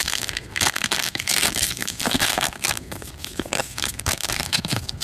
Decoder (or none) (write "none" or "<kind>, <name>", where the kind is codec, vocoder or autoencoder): codec, SNAC